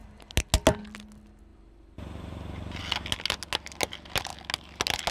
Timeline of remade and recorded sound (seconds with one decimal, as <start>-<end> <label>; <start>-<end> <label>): 0.0-1.5 recorded; 1.5-2.8 remade; 2.8-5.1 recorded